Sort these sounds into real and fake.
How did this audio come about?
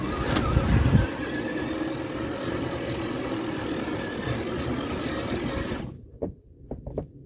real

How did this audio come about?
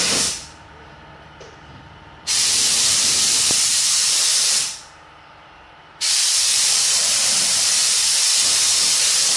fake